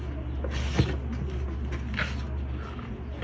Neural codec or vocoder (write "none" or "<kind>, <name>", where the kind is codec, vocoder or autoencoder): none